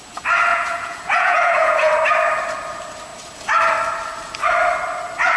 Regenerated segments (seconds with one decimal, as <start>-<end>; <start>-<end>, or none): 0.5-1.9